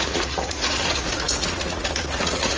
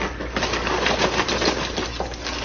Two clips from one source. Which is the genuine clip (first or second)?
second